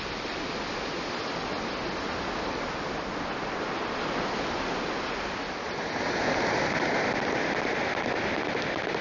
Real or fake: real